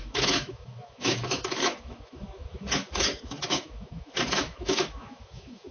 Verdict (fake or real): fake